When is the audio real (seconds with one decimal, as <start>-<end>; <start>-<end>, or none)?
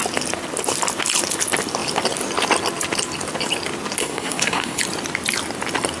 0.0-4.0; 4.8-6.0